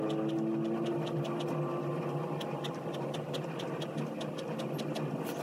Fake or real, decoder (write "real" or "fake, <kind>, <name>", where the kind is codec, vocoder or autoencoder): real